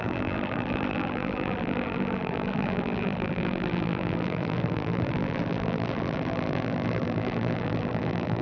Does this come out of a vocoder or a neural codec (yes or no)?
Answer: yes